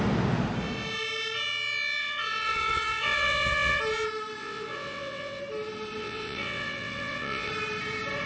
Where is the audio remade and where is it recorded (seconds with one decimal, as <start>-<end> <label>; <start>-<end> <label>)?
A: 0.0-2.0 recorded; 2.0-3.8 remade; 3.8-4.4 recorded; 4.4-5.4 remade; 5.4-6.0 recorded; 6.0-7.5 remade; 7.5-8.3 recorded